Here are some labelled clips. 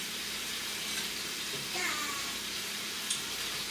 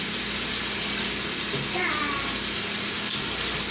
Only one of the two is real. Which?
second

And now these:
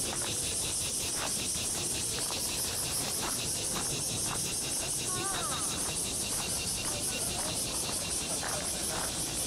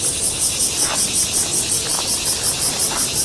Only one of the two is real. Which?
second